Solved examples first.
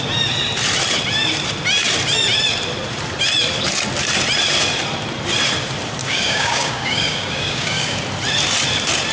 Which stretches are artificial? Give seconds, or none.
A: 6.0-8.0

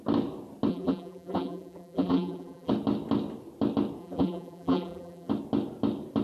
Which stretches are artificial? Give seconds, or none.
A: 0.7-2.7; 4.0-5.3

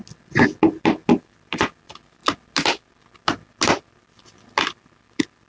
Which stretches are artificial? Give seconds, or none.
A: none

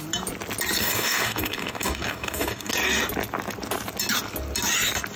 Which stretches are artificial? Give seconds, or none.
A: 0.8-2.7